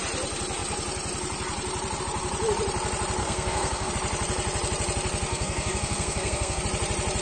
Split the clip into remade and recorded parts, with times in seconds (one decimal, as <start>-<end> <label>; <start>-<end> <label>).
0.0-3.2 recorded; 3.2-3.9 remade; 3.9-5.3 recorded; 5.3-6.6 remade; 6.6-7.2 recorded